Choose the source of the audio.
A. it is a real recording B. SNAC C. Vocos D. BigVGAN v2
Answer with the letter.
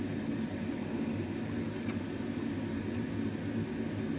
A